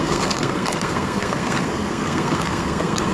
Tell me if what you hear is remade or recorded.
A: remade